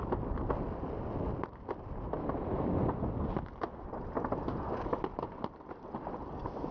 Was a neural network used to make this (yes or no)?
no